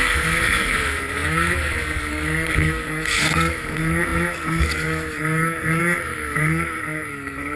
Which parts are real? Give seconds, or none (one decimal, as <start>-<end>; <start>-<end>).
none